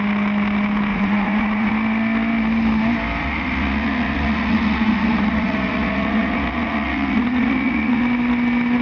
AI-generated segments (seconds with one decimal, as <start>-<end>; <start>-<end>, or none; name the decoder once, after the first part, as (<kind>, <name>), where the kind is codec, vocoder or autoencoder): 0.9-1.7 (vocoder, Vocos); 3.2-8.0